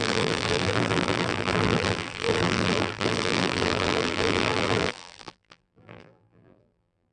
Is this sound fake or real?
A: fake